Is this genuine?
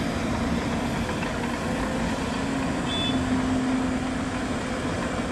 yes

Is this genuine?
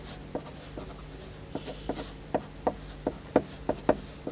yes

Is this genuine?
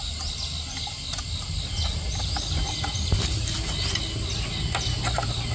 yes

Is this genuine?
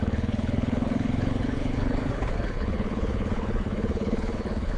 no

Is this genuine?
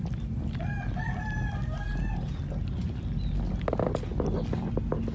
yes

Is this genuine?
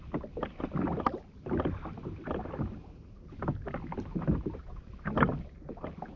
yes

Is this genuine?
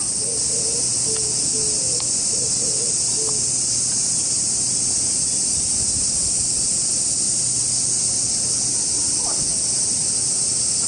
yes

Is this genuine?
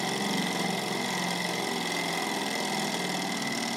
yes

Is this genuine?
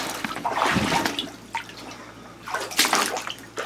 yes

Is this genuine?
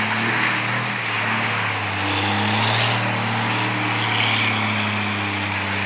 yes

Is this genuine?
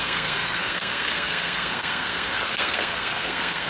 no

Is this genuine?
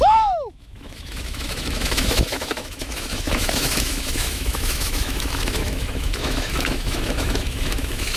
no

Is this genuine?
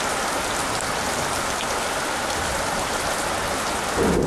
yes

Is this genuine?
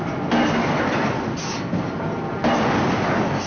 yes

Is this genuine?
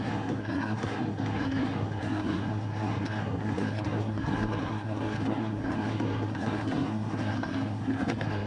no